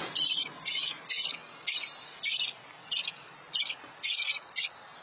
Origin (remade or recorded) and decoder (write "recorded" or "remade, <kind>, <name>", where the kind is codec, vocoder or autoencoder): recorded